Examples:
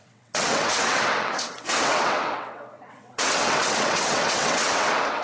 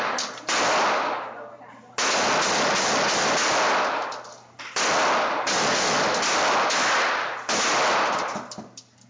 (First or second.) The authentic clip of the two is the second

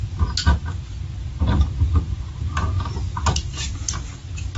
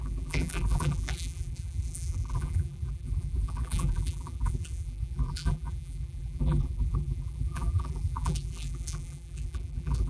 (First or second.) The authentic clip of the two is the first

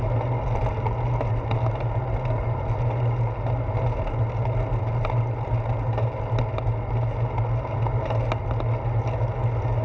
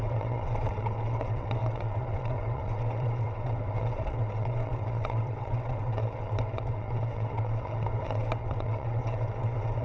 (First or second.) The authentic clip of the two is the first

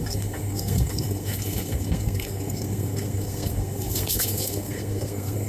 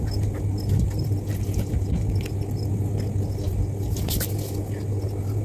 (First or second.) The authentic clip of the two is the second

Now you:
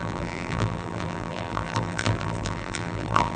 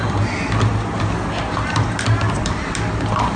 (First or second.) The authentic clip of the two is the second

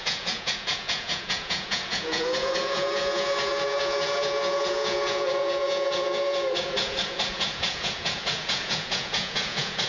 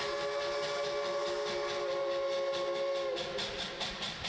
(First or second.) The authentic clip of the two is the second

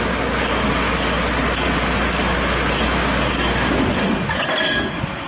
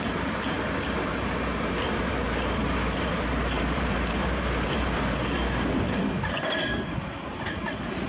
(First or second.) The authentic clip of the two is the first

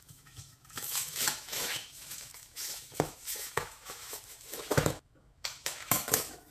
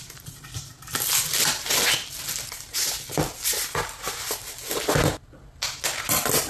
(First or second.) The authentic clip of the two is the second